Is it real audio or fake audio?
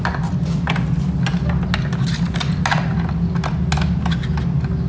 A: real